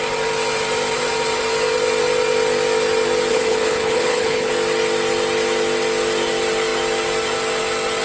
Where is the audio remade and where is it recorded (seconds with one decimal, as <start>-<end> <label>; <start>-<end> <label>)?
0.0-3.3 recorded; 3.3-4.5 remade; 4.5-8.0 recorded